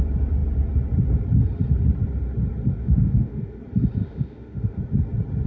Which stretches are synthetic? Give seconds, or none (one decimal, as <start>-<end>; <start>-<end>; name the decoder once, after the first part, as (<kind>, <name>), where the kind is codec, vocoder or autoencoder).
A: 2.8-3.6 (autoencoder, DAC-VAE); 4.0-4.8